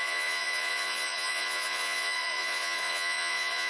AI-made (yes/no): yes